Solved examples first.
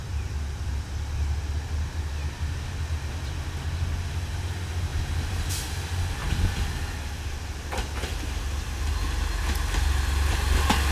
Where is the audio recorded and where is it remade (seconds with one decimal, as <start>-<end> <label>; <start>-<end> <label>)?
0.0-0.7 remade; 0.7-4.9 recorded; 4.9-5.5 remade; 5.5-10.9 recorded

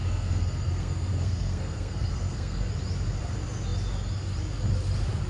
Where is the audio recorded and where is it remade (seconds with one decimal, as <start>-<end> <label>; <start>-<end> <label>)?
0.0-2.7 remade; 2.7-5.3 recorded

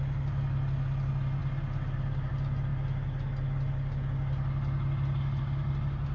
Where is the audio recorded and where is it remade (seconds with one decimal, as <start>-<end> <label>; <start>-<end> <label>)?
0.0-6.1 recorded

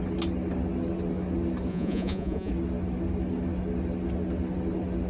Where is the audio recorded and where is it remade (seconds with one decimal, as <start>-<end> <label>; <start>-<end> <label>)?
0.0-1.7 recorded; 1.7-2.5 remade; 2.5-5.1 recorded

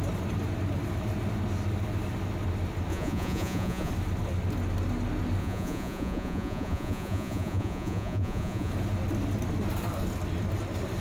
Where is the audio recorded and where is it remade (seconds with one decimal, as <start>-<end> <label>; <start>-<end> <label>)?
0.0-2.9 recorded; 2.9-3.9 remade; 3.9-5.4 recorded; 5.4-8.7 remade; 8.7-11.0 recorded

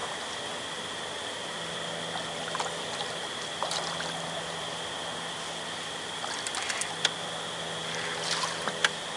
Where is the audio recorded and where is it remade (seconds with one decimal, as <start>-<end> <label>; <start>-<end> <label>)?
0.0-9.2 recorded

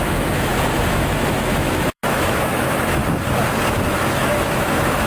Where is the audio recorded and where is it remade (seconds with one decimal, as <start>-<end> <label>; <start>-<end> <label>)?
0.0-3.0 remade; 3.0-4.1 recorded; 4.1-5.1 remade